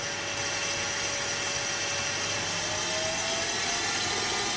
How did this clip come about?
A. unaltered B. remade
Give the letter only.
A